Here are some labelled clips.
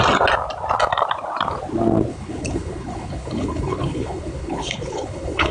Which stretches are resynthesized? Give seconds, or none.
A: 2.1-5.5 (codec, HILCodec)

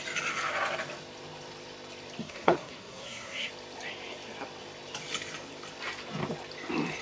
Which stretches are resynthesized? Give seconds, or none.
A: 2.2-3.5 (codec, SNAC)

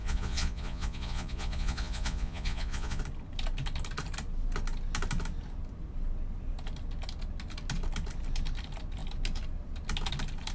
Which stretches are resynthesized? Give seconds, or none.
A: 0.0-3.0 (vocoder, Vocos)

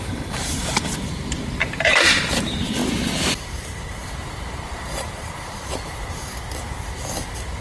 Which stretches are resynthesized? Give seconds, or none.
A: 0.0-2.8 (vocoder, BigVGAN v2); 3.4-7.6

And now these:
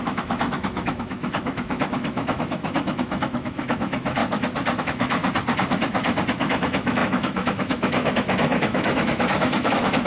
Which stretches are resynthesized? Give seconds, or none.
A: 0.0-4.2 (autoencoder, DAC-VAE); 4.8-5.2; 6.4-10.1